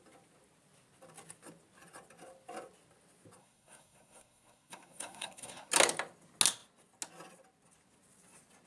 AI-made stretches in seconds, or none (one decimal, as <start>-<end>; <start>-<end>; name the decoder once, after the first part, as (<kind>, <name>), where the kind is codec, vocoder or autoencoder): 3.4-5.7 (codec, SNAC)